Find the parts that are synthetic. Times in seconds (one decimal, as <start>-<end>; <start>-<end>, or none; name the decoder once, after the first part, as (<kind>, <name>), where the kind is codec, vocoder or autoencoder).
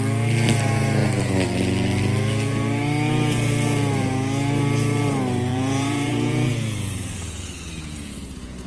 5.5-8.7 (vocoder, Vocos)